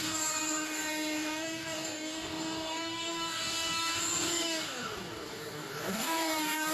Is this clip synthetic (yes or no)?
yes